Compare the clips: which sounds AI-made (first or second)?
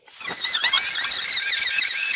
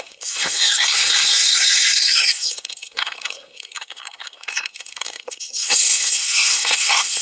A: second